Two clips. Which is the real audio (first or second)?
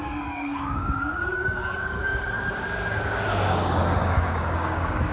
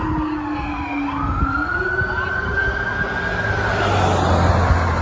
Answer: second